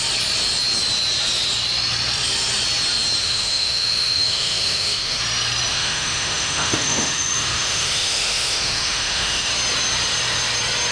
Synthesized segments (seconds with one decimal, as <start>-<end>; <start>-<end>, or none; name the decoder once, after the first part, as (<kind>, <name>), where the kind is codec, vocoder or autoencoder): 3.2-5.2 (autoencoder, DAC-VAE); 5.7-9.5